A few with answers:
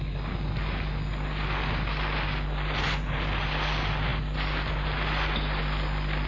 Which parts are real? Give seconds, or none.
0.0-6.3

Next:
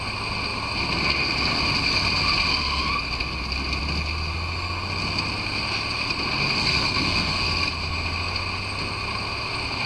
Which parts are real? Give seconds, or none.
0.0-6.6; 7.7-9.9

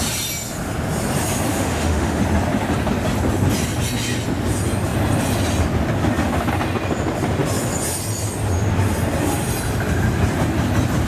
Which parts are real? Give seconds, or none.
0.0-1.5; 2.2-11.1

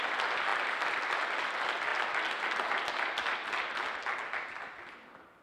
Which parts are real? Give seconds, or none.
1.9-4.3

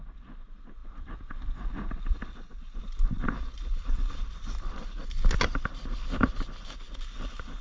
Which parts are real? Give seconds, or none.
0.0-7.6

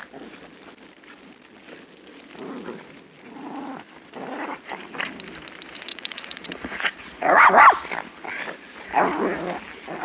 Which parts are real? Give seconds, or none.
0.0-5.9; 7.5-10.0

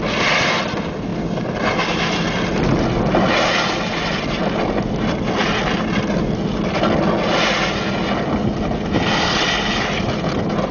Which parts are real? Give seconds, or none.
0.0-10.7

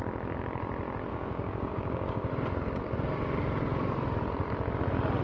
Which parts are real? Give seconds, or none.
0.0-1.1; 2.3-5.2